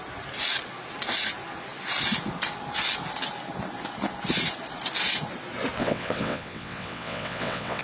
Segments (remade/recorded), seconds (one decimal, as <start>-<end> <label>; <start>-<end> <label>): 0.0-5.8 recorded; 5.8-7.8 remade